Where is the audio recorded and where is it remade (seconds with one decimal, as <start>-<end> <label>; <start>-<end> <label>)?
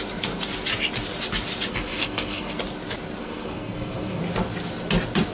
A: 0.0-1.7 recorded; 1.7-2.6 remade; 2.6-3.2 recorded; 3.2-4.2 remade; 4.2-5.3 recorded